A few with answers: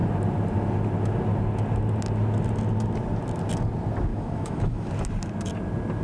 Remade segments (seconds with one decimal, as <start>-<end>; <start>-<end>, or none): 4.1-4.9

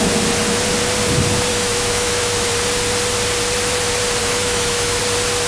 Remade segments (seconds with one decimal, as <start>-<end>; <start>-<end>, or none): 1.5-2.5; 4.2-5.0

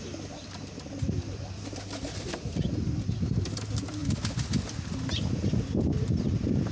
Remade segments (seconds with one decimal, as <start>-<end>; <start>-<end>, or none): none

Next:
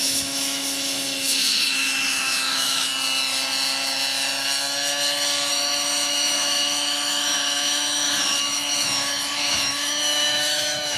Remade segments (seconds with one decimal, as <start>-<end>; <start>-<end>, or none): 0.0-2.9; 5.5-11.0

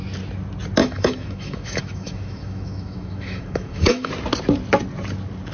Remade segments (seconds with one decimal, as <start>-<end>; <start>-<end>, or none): 0.8-4.1

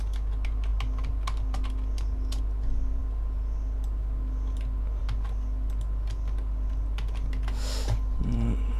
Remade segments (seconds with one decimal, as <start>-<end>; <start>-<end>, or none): none